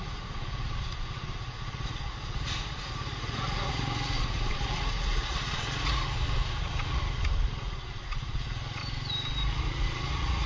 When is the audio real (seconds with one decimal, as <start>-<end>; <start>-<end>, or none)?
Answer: 8.8-9.5